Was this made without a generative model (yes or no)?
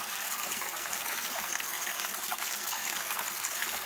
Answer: no